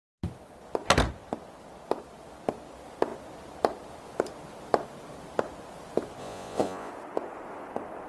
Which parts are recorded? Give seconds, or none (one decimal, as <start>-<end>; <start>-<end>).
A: 0.0-6.2; 6.9-8.1